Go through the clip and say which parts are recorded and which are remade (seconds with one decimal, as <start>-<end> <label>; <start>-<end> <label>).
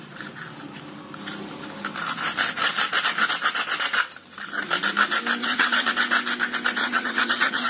0.0-5.4 recorded; 5.4-5.9 remade; 5.9-6.8 recorded; 6.8-7.7 remade